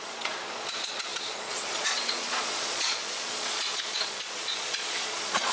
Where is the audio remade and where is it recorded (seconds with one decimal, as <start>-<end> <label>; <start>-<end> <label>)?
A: 0.0-5.5 remade